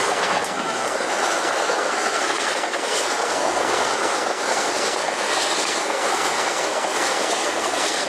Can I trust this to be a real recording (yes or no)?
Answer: no